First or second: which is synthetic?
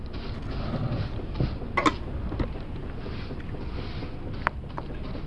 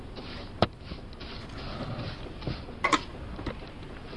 second